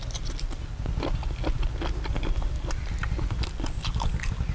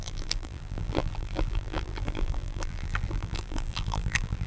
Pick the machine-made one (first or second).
second